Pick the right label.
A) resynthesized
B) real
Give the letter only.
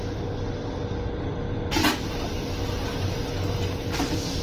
B